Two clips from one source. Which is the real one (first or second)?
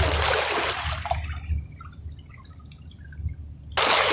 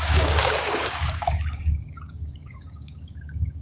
first